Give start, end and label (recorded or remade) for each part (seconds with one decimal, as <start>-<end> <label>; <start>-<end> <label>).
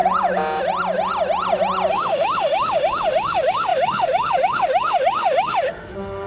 0.0-1.9 recorded; 1.9-6.3 remade